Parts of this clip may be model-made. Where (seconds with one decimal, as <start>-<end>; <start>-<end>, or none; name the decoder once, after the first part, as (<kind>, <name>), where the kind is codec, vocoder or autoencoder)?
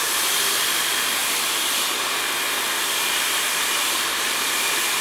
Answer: 0.0-1.2 (vocoder, BigVGAN v2); 3.3-5.0